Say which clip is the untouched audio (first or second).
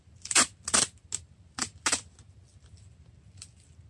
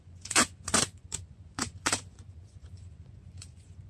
first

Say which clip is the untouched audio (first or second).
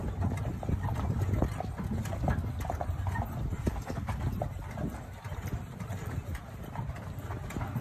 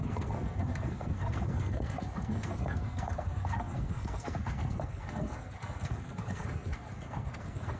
first